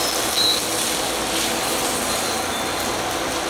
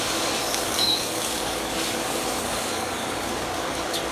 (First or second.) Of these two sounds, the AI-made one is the second